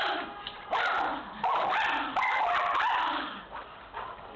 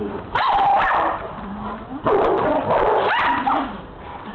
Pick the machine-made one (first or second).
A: second